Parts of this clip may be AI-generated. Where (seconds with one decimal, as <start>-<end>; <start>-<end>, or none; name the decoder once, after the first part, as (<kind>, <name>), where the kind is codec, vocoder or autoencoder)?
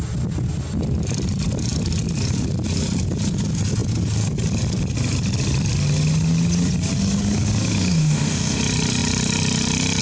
7.9-8.6 (codec, DAC)